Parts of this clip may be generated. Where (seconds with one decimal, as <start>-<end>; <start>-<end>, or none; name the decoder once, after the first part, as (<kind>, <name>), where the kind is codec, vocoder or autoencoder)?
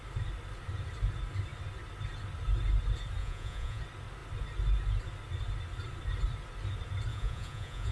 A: 3.2-3.8 (vocoder, Vocos); 7.1-7.9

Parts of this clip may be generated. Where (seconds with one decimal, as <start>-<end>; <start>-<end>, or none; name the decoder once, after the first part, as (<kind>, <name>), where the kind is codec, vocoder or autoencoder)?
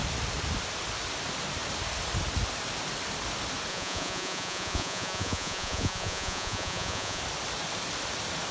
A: 3.7-7.2 (vocoder, Vocos)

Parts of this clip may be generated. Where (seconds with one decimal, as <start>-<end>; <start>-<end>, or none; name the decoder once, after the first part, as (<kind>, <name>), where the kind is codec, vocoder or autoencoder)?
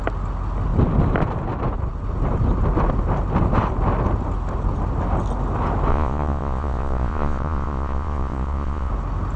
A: 5.9-8.9 (vocoder, Vocos)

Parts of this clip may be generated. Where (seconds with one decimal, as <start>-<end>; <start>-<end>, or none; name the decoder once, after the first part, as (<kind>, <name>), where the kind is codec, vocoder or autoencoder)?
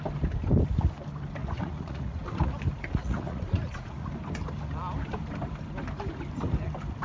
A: 1.4-2.5 (vocoder, Vocos); 3.0-4.1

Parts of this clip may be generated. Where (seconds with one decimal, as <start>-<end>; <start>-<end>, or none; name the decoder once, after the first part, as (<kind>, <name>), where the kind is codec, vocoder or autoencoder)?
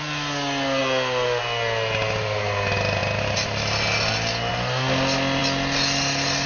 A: none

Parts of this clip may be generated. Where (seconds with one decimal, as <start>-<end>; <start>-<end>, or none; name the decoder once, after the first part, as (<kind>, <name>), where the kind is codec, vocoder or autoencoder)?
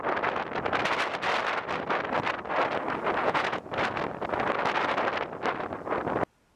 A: 3.2-3.7 (vocoder, Vocos)